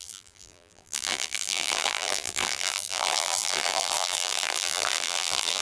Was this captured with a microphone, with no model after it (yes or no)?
no